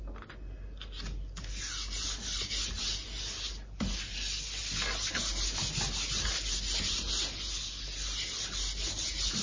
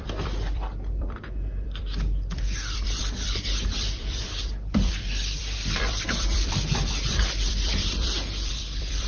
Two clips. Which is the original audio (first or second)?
first